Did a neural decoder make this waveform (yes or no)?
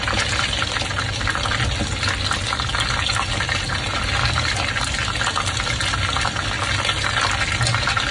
no